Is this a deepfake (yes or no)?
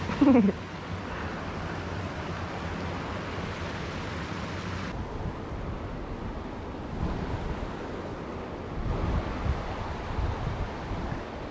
no